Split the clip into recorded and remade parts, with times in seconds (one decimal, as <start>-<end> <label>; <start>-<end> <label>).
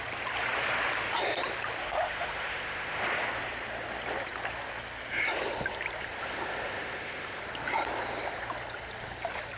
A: 0.0-1.8 recorded; 1.8-3.0 remade; 3.0-6.2 recorded; 6.2-7.4 remade; 7.4-9.6 recorded